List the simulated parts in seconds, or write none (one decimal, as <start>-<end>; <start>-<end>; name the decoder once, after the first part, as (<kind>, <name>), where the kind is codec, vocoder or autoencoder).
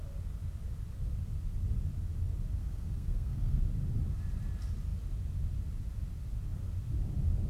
2.6-3.6 (codec, SNAC)